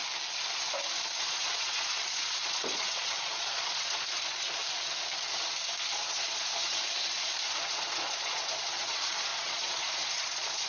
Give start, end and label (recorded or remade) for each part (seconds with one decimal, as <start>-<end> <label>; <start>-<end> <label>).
0.0-1.3 recorded; 1.3-4.6 remade; 4.6-5.9 recorded; 5.9-10.7 remade